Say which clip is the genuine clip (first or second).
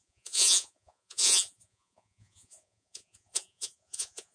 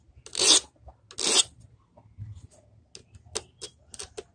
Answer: second